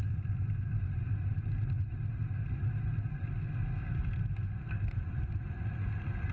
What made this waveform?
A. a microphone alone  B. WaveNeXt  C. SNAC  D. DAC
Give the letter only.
A